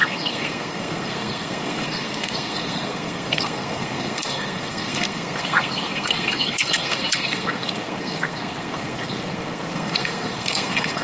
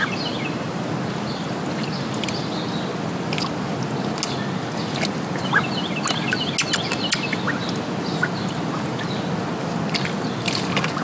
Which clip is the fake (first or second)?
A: first